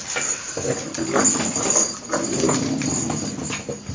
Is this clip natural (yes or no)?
yes